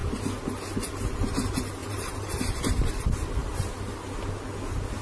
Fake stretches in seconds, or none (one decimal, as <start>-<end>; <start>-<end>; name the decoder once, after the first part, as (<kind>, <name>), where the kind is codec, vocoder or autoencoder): 1.8-2.9 (vocoder, BigVGAN v2); 3.4-4.1

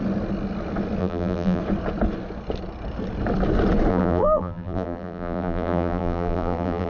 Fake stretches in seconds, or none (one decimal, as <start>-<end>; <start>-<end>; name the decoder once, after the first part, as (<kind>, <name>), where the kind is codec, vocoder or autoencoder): 1.0-1.6 (vocoder, BigVGAN v2); 3.9-6.9

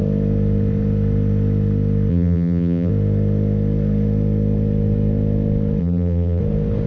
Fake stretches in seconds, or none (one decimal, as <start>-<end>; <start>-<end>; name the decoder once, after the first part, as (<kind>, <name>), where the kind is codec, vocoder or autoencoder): 2.1-2.9 (vocoder, BigVGAN v2); 5.8-6.4

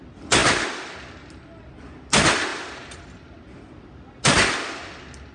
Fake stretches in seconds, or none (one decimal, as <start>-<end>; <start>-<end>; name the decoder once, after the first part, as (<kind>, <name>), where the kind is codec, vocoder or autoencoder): 2.5-3.6 (vocoder, BigVGAN v2)

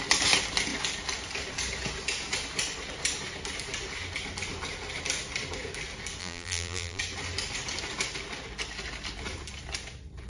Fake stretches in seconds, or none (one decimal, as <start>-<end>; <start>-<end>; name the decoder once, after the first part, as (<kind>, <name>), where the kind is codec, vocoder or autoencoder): 6.2-7.0 (vocoder, BigVGAN v2)

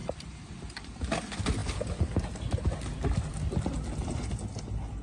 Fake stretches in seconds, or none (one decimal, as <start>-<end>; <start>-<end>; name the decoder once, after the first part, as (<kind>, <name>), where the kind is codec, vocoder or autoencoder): 0.0-0.9 (vocoder, BigVGAN v2)